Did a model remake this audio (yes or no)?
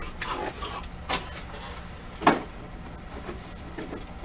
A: no